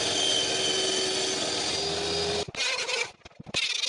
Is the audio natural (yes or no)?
yes